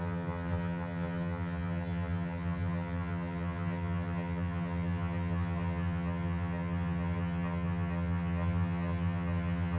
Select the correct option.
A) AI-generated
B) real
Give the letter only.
A